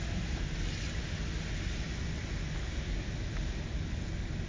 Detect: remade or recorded recorded